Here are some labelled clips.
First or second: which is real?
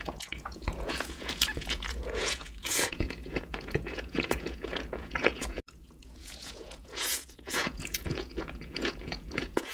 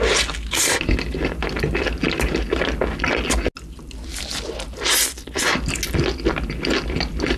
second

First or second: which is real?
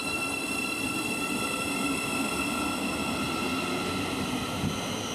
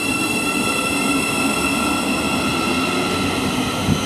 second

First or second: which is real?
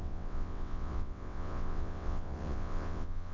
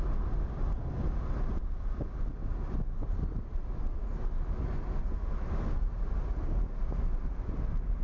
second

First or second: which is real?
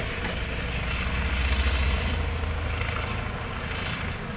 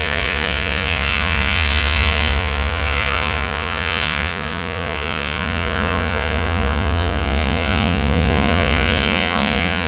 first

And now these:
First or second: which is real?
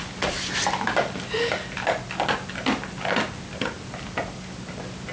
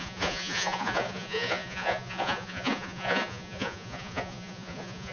first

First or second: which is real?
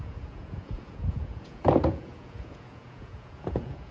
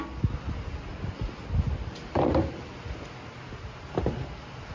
second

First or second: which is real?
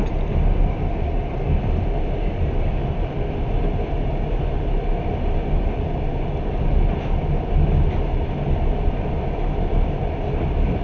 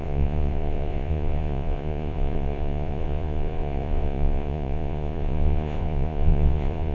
first